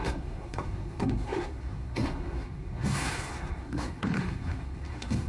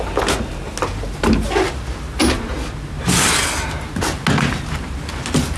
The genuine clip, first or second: second